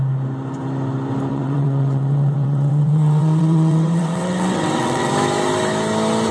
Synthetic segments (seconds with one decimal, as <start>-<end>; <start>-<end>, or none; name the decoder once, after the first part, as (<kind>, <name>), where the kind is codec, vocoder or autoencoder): 1.3-5.1 (vocoder, WaveNeXt)